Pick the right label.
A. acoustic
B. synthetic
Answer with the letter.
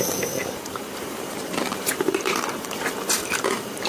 B